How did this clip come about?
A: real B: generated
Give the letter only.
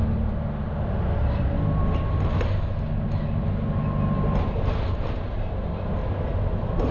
A